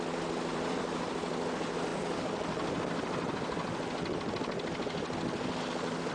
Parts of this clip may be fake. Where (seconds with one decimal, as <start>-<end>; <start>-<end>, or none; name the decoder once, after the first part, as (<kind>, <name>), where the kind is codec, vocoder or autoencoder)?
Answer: 0.5-1.5 (vocoder, BigVGAN v2)